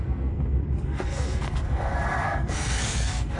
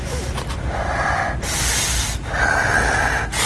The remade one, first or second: first